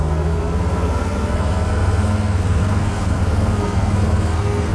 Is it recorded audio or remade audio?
remade